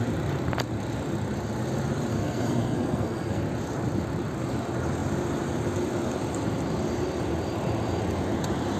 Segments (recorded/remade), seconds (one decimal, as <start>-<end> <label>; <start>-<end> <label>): 0.0-2.1 recorded; 2.1-3.4 remade; 3.4-8.8 recorded